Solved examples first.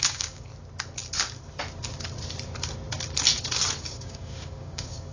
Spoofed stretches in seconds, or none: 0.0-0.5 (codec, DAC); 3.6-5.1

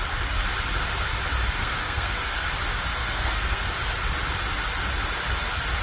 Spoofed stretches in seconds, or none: 1.6-2.5 (codec, SNAC); 2.9-3.6